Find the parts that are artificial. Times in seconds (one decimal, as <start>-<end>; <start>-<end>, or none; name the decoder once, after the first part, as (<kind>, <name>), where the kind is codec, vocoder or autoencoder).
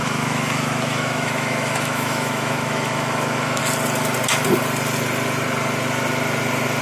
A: 0.0-3.6 (autoencoder, DAC-VAE)